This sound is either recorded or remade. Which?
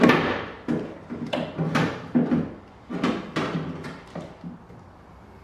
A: remade